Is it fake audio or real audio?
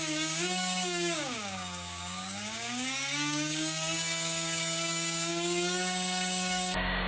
fake